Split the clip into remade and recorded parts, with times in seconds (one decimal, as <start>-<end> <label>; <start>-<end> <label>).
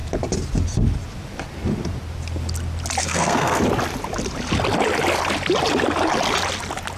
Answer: 0.0-3.0 recorded; 3.0-3.6 remade; 3.6-7.0 recorded